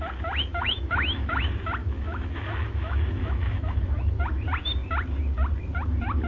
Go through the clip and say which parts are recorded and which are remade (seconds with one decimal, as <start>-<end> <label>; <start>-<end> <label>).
0.0-0.5 recorded; 0.5-1.4 remade; 1.4-1.8 recorded; 1.8-4.2 remade; 4.2-6.3 recorded

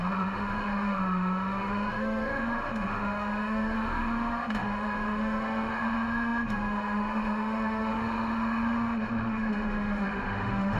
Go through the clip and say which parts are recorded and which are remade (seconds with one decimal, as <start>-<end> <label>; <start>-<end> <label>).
0.0-10.8 remade

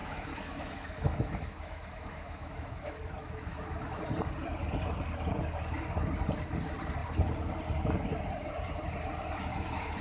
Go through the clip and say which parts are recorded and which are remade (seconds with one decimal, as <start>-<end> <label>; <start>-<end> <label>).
0.0-4.0 remade; 4.0-9.5 recorded; 9.5-10.0 remade

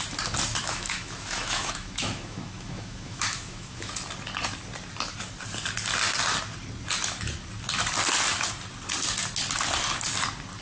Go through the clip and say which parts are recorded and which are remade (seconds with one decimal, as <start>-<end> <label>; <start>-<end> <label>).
0.0-0.5 recorded; 0.5-3.9 remade; 3.9-10.6 recorded

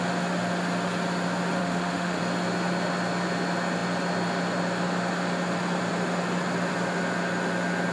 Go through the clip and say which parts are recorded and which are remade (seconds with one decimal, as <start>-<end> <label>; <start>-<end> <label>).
0.0-1.6 recorded; 1.6-2.2 remade; 2.2-7.9 recorded